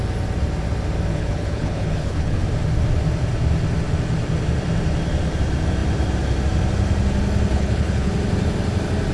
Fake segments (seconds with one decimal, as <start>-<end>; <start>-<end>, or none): 1.1-2.4; 7.5-8.1

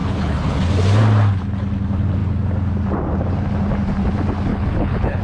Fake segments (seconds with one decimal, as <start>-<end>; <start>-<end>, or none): 0.0-0.6; 4.5-5.2

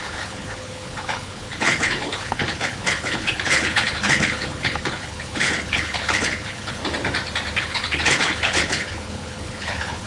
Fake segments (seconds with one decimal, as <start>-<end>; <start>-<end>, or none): 0.0-6.8; 7.6-10.1

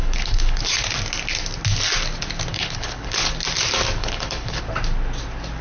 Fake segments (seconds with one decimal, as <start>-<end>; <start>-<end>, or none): 0.0-0.6; 2.5-3.3; 4.0-4.6

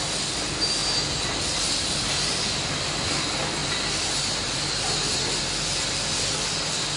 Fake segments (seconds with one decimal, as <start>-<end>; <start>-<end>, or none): none

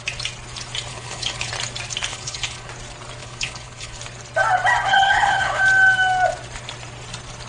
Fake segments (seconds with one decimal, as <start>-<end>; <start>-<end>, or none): 0.9-1.5; 2.1-2.7; 3.2-4.0; 4.9-5.6

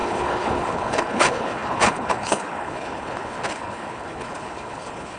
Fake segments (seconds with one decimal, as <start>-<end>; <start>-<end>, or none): 0.0-5.2

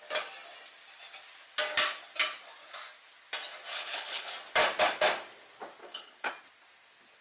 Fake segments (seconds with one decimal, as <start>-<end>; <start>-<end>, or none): 3.7-4.3; 5.8-6.3